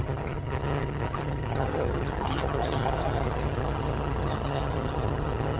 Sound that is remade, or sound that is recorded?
remade